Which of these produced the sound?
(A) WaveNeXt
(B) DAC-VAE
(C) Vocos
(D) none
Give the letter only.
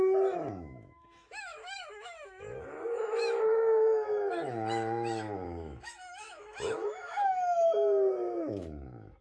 B